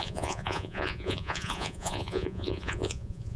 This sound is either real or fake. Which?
fake